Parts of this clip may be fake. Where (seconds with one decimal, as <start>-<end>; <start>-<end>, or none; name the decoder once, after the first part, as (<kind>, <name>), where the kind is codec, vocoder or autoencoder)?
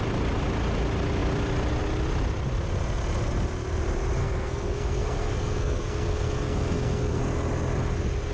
4.2-7.2 (codec, SNAC)